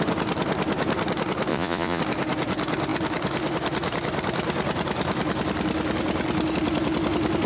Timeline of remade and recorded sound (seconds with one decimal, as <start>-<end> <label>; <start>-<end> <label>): 0.0-1.5 recorded; 1.5-2.0 remade; 2.0-7.5 recorded